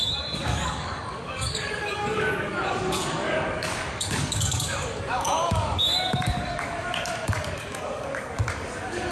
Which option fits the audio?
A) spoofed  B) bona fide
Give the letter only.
A